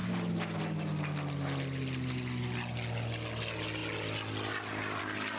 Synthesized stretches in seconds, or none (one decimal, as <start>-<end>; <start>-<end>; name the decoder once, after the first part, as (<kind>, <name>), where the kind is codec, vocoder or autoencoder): none